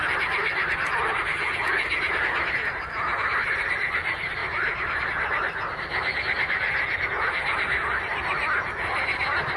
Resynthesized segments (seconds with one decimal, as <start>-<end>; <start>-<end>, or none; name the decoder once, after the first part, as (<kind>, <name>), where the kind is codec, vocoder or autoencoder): 4.4-5.7 (vocoder, BigVGAN v2)